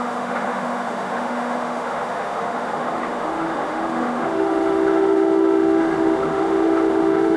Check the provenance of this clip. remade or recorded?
remade